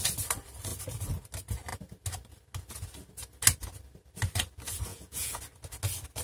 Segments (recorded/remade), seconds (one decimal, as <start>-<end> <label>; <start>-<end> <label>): 0.0-4.9 recorded; 4.9-5.4 remade; 5.4-6.2 recorded